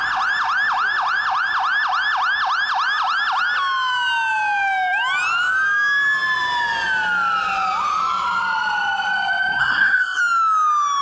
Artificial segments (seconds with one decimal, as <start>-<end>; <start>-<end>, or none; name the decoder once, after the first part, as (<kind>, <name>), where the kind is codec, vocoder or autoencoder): 9.6-10.2 (codec, SNAC)